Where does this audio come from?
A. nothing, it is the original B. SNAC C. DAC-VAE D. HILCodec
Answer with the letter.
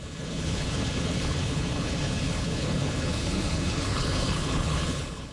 D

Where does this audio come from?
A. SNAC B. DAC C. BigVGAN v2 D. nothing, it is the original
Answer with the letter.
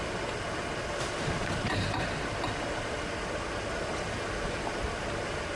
D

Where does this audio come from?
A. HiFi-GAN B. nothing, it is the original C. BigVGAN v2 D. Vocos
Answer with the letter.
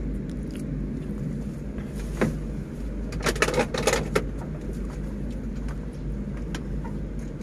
B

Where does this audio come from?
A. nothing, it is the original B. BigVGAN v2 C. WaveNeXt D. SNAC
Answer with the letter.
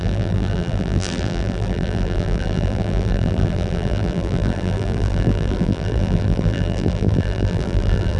B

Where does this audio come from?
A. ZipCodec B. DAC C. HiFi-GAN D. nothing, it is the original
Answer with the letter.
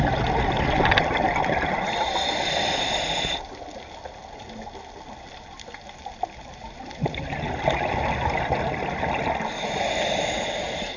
D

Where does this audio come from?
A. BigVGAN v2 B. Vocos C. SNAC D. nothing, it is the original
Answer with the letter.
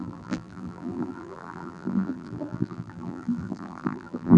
A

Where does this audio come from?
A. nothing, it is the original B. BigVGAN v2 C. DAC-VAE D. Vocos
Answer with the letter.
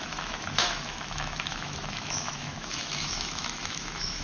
C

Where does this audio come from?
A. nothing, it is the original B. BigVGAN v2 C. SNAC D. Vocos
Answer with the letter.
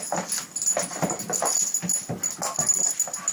A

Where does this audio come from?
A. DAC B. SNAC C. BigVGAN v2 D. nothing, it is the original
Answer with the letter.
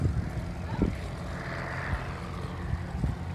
D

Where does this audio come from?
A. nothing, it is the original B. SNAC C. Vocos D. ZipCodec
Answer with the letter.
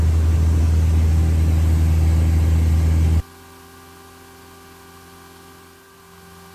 A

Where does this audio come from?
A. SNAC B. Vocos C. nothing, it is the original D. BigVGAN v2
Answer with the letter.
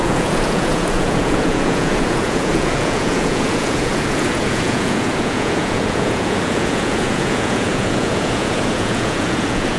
B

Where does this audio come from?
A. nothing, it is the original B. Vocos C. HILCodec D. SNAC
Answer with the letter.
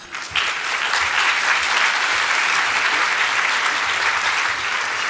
A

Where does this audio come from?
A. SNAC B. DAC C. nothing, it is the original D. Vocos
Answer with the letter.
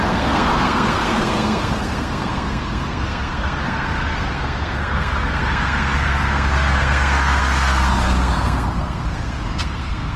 A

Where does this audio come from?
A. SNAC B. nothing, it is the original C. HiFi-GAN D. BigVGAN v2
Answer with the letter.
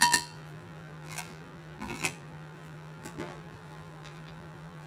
D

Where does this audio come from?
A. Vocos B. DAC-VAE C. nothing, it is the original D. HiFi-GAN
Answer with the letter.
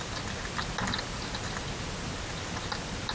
C